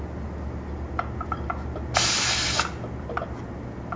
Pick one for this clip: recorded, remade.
recorded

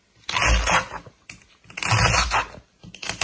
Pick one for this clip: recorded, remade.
recorded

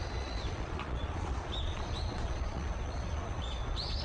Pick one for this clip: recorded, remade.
remade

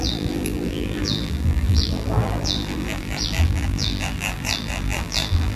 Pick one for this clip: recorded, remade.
remade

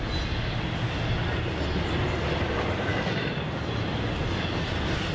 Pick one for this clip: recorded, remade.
recorded